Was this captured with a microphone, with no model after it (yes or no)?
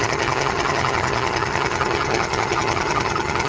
no